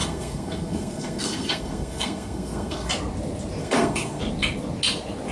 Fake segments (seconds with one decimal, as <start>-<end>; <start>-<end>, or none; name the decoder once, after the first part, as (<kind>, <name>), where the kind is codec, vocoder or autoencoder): 0.0-2.9 (codec, SNAC); 3.6-4.2